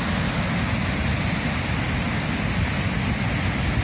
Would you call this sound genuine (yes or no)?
yes